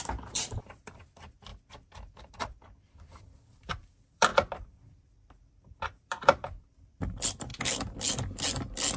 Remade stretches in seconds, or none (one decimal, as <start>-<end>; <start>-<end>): 0.0-1.5; 2.2-7.5